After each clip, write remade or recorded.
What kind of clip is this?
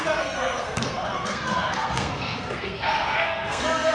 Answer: remade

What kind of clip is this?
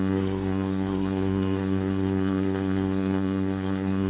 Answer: remade